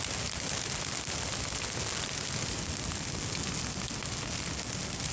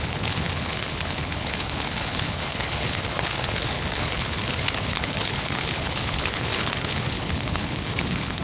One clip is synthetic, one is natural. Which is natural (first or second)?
first